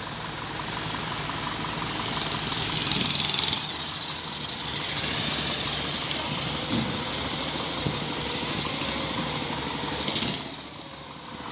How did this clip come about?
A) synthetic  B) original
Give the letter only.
B